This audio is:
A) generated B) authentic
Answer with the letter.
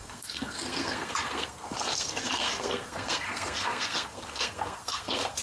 A